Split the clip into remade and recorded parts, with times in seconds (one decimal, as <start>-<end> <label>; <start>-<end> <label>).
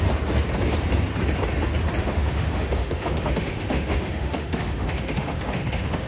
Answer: 0.0-2.0 recorded; 2.0-6.1 remade